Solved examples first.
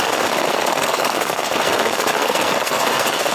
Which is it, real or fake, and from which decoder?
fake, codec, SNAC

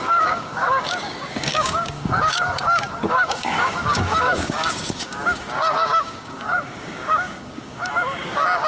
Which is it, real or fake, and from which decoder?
fake, codec, DAC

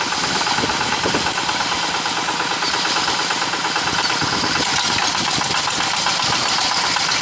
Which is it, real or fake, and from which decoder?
real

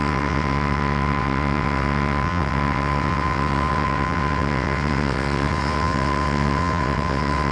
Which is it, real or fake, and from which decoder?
fake, vocoder, WaveNeXt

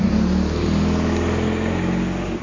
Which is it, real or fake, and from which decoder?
real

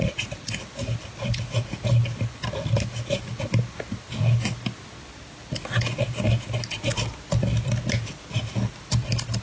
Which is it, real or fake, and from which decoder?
real